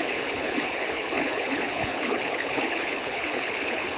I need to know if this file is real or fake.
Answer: fake